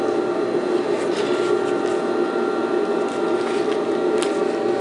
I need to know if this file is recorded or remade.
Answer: recorded